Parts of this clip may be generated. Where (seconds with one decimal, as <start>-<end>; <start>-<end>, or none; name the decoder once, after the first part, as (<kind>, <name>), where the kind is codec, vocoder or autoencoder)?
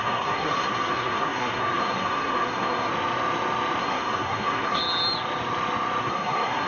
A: 0.0-2.9 (codec, SNAC); 3.8-4.8; 6.0-6.7